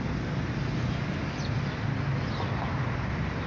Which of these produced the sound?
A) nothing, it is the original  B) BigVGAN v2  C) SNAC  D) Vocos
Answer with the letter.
A